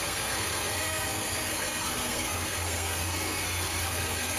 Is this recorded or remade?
remade